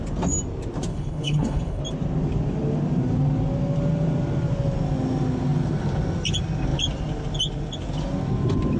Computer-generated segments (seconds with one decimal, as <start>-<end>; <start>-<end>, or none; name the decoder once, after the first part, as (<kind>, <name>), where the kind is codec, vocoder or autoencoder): 0.9-1.8 (codec, HILCodec)

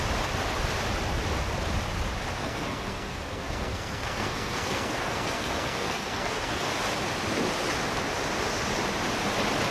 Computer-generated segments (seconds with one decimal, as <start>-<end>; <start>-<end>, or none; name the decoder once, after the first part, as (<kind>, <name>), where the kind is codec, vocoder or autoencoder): 2.4-6.7 (codec, SNAC)

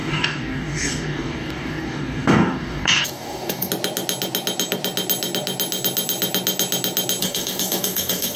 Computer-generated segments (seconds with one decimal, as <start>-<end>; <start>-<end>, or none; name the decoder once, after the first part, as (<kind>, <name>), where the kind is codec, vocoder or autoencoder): 0.0-3.7 (codec, DAC); 7.2-8.4

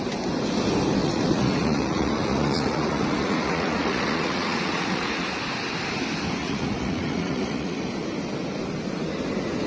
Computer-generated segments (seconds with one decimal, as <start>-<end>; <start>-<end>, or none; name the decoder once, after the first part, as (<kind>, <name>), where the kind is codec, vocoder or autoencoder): 1.0-5.3 (vocoder, Vocos); 6.4-7.8